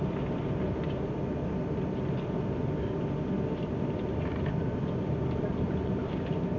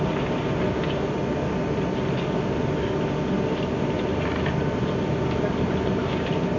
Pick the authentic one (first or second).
second